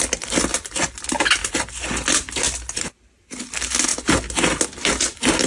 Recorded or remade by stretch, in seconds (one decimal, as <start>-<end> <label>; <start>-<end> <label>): 0.0-5.5 recorded